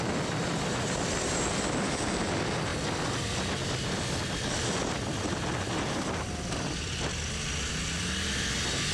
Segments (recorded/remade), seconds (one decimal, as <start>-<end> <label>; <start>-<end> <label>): 0.0-8.9 recorded